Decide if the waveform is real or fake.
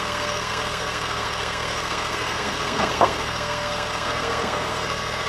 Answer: fake